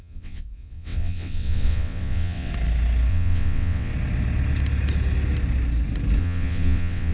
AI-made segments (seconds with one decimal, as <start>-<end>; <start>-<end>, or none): 0.0-2.5; 3.1-3.9; 6.2-7.1